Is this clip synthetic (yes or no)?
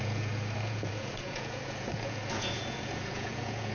yes